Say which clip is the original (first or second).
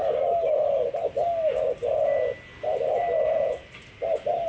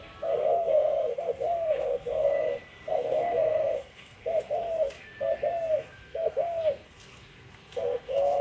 first